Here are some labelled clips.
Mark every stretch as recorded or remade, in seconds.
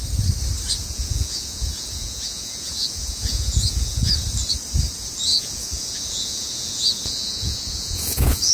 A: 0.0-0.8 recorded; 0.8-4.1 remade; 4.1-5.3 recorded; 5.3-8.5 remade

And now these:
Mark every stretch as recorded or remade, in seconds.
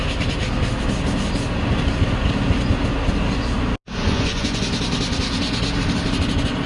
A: 0.0-4.0 recorded; 4.0-4.6 remade; 4.6-6.7 recorded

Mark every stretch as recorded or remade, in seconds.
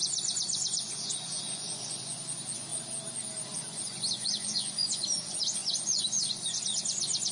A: 0.0-2.7 remade; 2.7-3.4 recorded; 3.4-7.3 remade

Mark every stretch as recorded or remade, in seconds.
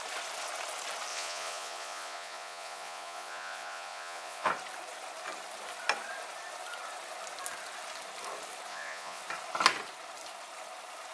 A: 0.0-1.1 recorded; 1.1-4.5 remade; 4.5-8.7 recorded; 8.7-9.2 remade; 9.2-11.1 recorded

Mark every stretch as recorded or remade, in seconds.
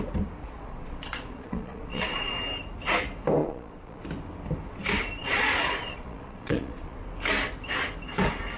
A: 0.0-0.4 recorded; 0.4-2.3 remade; 2.3-3.4 recorded; 3.4-4.0 remade; 4.0-5.2 recorded; 5.2-7.0 remade; 7.0-8.6 recorded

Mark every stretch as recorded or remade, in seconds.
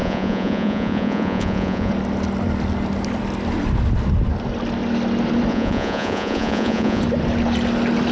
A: 0.0-1.9 remade; 1.9-5.5 recorded; 5.5-7.0 remade; 7.0-8.1 recorded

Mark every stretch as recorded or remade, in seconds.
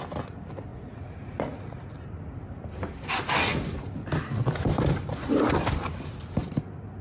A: 0.0-0.7 recorded; 0.7-1.9 remade; 1.9-7.0 recorded